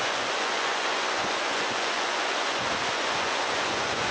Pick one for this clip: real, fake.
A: fake